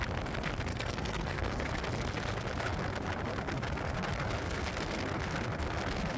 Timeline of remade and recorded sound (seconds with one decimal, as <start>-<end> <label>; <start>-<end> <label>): 0.0-0.7 recorded; 0.7-1.7 remade; 1.7-6.2 recorded